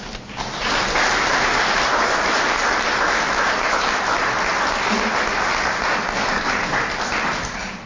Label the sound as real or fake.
real